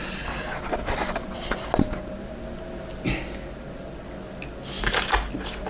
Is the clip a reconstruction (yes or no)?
no